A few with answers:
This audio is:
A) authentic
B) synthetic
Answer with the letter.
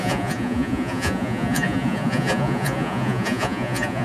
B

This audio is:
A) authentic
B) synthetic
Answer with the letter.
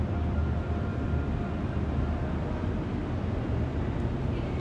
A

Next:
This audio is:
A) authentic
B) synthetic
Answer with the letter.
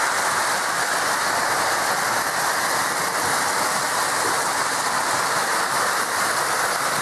A